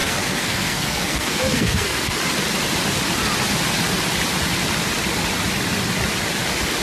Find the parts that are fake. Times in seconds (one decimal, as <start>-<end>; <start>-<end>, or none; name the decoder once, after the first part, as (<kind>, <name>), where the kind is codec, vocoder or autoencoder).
0.0-2.2 (codec, SNAC)